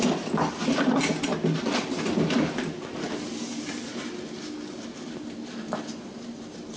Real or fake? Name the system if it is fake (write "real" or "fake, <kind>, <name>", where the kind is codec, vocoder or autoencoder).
real